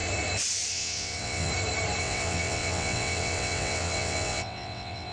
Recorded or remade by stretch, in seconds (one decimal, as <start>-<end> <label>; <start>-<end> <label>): 0.0-0.7 recorded; 0.7-1.5 remade; 1.5-2.0 recorded; 2.0-5.1 remade